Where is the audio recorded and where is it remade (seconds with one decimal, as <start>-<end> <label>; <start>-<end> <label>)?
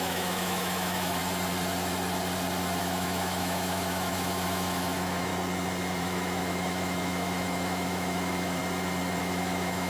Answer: 0.0-1.2 remade; 1.2-2.8 recorded; 2.8-5.3 remade; 5.3-6.0 recorded; 6.0-8.6 remade; 8.6-9.2 recorded; 9.2-9.9 remade